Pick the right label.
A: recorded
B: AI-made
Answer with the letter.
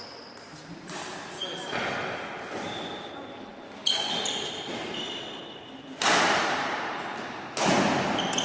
A